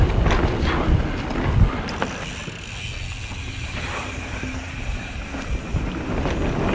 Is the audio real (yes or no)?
yes